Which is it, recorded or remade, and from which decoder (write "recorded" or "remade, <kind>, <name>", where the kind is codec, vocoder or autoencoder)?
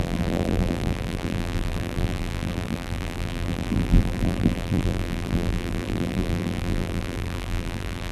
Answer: remade, vocoder, BigVGAN v2